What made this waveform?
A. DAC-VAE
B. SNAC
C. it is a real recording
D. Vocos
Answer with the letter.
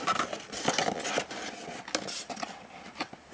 C